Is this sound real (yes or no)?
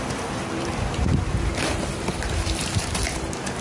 no